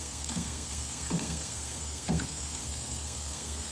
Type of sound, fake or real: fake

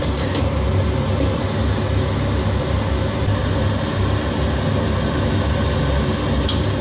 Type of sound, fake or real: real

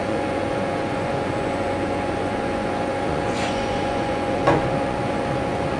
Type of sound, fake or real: fake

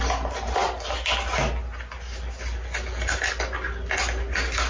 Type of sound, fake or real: real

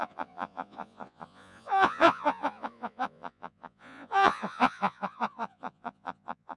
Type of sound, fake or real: fake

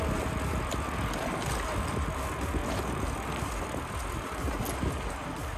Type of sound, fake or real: real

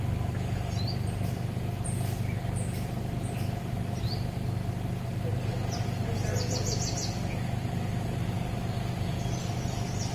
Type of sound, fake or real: real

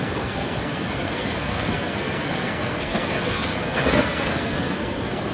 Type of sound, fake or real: fake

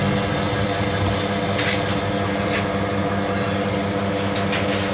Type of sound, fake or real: real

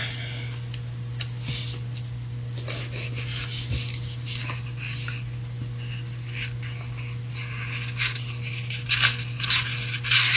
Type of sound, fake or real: real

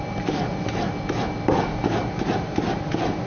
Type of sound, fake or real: real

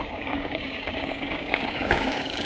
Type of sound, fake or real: fake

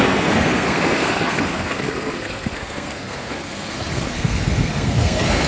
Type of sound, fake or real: fake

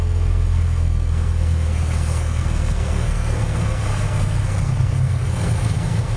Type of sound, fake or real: fake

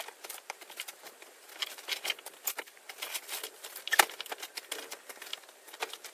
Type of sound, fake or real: fake